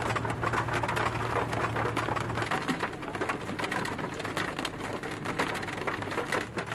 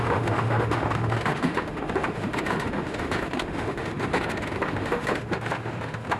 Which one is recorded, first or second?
first